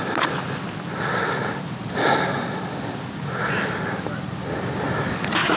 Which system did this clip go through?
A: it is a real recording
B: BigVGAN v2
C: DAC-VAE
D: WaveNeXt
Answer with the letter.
A